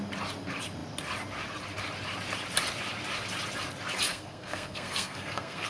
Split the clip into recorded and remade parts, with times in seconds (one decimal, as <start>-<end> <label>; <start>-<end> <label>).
0.0-4.1 recorded; 4.1-5.7 remade

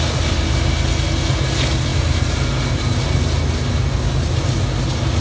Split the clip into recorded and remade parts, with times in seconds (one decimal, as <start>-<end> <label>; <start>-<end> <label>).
0.0-5.2 recorded

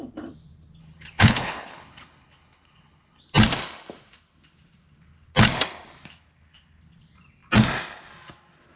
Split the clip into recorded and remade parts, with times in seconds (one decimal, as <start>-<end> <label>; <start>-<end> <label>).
0.0-0.8 recorded; 0.8-3.2 remade; 3.2-8.8 recorded

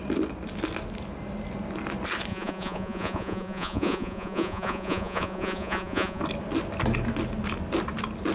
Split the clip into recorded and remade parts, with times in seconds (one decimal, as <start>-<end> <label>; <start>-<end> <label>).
0.0-2.3 recorded; 2.3-6.2 remade; 6.2-8.3 recorded

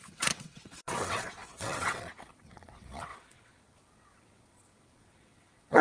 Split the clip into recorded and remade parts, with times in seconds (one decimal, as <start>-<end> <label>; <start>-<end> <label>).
0.0-5.8 remade

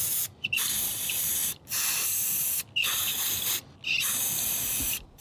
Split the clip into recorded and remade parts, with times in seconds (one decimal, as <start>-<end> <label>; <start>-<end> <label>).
0.0-3.0 remade; 3.0-4.7 recorded; 4.7-5.2 remade